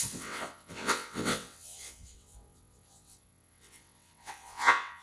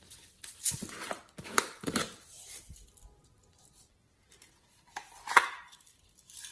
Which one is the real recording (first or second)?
second